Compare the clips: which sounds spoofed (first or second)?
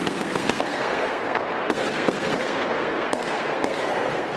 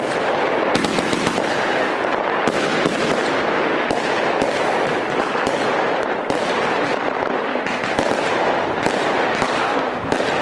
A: first